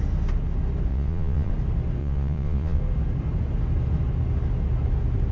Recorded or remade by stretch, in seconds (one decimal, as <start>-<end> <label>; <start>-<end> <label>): 0.0-0.9 recorded; 0.9-1.5 remade; 1.5-2.0 recorded; 2.0-2.8 remade; 2.8-5.3 recorded